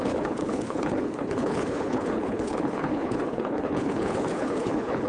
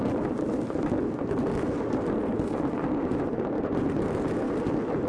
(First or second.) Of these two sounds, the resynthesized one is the first